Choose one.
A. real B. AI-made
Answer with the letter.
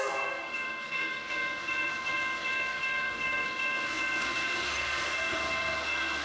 B